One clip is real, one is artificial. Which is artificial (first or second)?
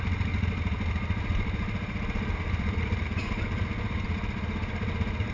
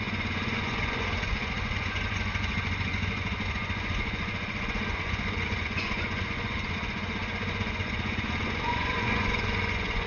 second